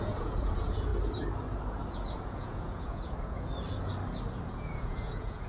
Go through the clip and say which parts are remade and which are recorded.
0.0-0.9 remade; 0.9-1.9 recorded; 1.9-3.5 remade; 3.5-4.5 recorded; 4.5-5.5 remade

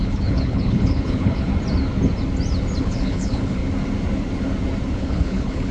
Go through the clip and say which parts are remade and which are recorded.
0.0-1.5 remade; 1.5-2.8 recorded; 2.8-3.6 remade; 3.6-4.9 recorded; 4.9-5.7 remade

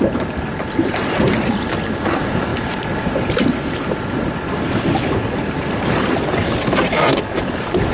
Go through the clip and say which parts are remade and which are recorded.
0.0-7.9 recorded

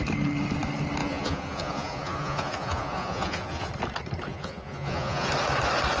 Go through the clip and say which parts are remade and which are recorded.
0.0-1.0 recorded; 1.0-3.7 remade; 3.7-4.3 recorded; 4.3-5.3 remade; 5.3-6.0 recorded